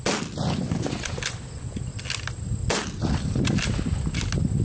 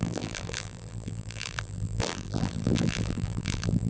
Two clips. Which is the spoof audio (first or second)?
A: second